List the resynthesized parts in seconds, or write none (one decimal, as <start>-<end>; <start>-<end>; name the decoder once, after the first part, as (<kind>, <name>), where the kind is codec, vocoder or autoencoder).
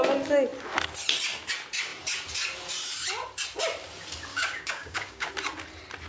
4.3-5.3 (codec, DAC)